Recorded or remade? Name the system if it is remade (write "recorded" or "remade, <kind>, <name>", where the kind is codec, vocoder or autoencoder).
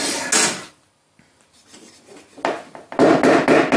recorded